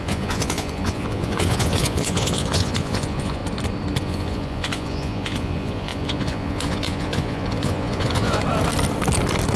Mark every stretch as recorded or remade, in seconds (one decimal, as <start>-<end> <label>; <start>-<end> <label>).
0.0-3.4 remade; 3.4-4.0 recorded; 4.0-8.4 remade; 8.4-9.6 recorded